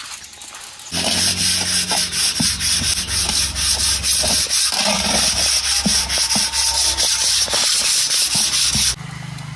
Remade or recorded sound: recorded